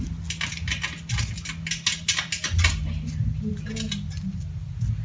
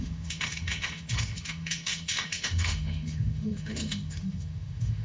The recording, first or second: first